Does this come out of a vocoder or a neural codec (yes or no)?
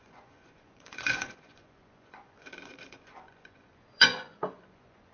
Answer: yes